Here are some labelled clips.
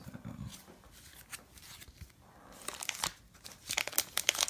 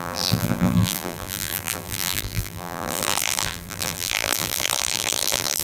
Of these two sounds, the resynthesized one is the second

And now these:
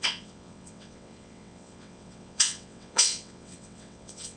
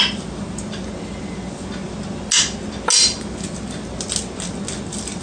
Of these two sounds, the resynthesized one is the first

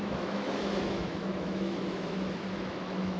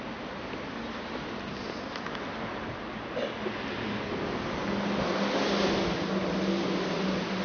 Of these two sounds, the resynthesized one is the first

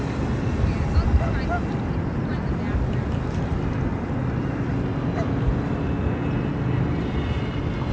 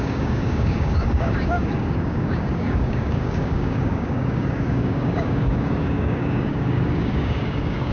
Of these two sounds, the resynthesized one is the second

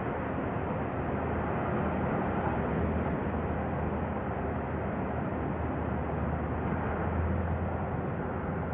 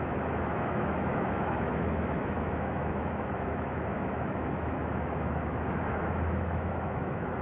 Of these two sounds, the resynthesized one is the second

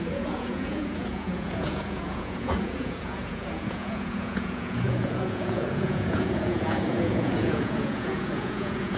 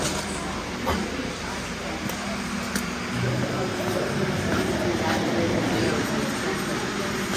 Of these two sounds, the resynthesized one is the first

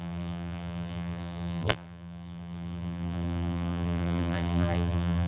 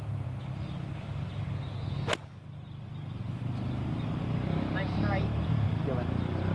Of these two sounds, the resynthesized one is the first